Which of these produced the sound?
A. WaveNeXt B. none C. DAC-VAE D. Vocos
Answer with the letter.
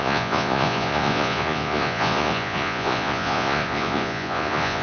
D